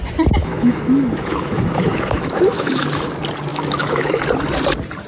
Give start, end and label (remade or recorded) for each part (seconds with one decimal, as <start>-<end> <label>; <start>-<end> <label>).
0.0-0.4 recorded; 0.4-3.1 remade; 3.1-3.5 recorded; 3.5-4.2 remade; 4.2-5.1 recorded